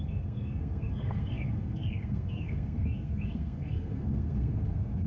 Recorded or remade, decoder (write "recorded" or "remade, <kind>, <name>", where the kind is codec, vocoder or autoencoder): remade, codec, SNAC